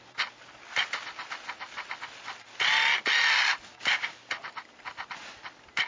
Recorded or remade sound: recorded